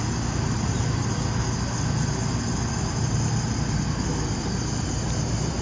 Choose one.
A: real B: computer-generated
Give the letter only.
A